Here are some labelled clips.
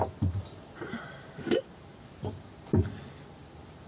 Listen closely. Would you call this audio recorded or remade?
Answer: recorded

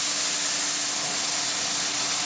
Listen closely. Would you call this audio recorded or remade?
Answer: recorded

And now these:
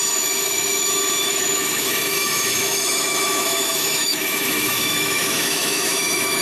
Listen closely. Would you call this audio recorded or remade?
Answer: remade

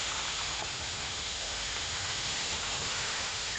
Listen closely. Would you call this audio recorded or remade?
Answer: remade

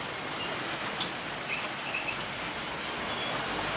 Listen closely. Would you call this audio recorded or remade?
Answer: recorded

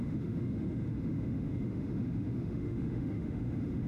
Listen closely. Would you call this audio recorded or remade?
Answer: remade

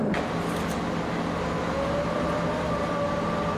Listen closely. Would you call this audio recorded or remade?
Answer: recorded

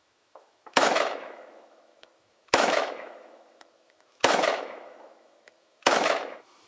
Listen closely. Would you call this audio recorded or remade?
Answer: remade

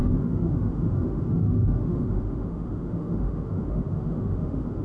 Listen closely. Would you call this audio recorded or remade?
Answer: remade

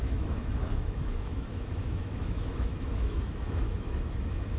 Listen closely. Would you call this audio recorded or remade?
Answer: remade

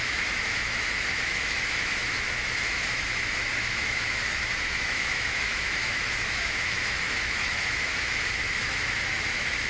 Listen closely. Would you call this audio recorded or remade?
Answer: remade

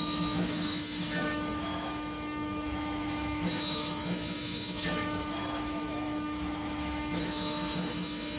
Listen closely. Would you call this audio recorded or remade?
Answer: remade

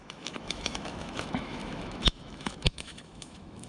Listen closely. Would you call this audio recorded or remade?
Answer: remade